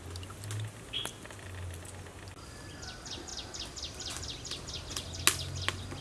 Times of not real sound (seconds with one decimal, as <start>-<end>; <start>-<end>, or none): none